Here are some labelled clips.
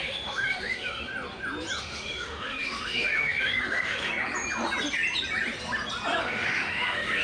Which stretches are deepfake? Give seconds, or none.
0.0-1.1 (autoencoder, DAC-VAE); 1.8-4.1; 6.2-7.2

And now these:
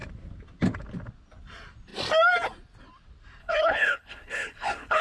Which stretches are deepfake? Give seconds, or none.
3.4-5.0 (codec, HILCodec)

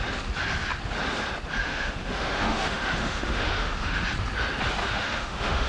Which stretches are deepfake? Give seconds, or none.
1.6-4.0 (autoencoder, DAC-VAE); 4.8-5.7

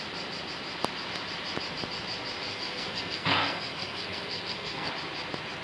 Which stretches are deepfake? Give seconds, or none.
2.5-4.9 (codec, SNAC)